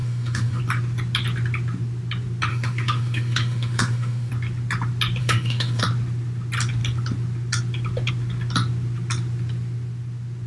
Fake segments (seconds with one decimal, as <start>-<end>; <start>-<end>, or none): 0.0-0.6; 2.5-4.3; 5.2-5.8